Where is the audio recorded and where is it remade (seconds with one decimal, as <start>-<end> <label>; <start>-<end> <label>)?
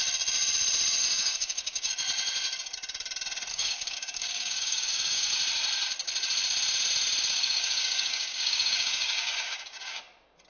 0.0-1.0 recorded; 1.0-1.9 remade; 1.9-3.5 recorded; 3.5-5.3 remade; 5.3-7.4 recorded; 7.4-10.0 remade; 10.0-10.5 recorded